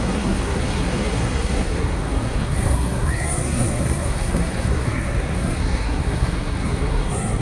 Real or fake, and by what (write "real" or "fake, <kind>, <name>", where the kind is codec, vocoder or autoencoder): fake, codec, SNAC